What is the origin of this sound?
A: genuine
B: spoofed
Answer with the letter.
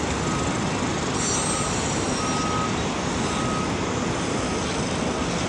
A